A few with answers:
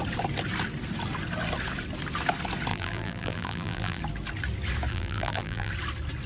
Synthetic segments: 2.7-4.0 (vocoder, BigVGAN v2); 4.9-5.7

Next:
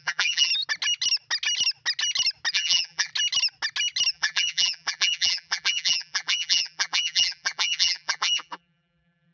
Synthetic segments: 0.0-0.5 (vocoder, BigVGAN v2); 2.5-3.1; 4.1-9.3

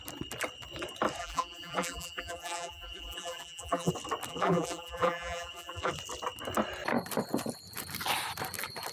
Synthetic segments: 1.2-3.9 (vocoder, BigVGAN v2); 4.3-5.9

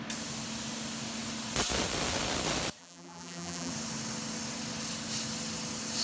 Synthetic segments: 2.8-3.7 (vocoder, BigVGAN v2)

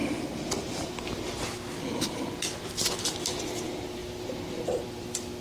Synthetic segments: 4.0-5.4 (vocoder, BigVGAN v2)

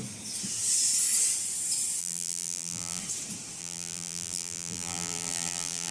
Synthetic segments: 2.0-3.0 (vocoder, BigVGAN v2); 3.6-5.9